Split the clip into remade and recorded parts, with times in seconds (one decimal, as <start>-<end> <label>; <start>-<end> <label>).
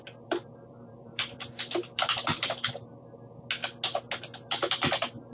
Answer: 0.0-2.9 remade; 2.9-5.3 recorded